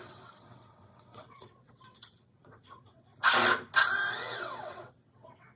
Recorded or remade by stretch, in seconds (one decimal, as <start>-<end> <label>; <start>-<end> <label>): 0.0-3.1 remade; 3.1-4.1 recorded; 4.1-5.6 remade